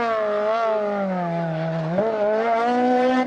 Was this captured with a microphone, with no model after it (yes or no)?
yes